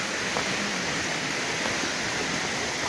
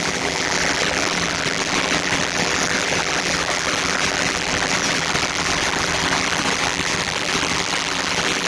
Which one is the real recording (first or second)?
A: first